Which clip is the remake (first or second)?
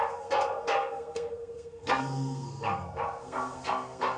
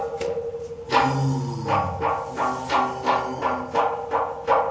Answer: first